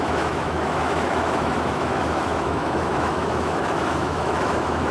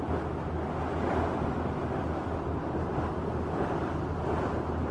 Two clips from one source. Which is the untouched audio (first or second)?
second